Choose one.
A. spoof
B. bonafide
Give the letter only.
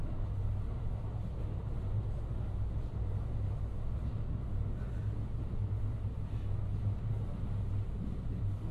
B